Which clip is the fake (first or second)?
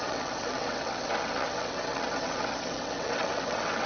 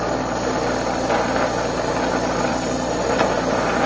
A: first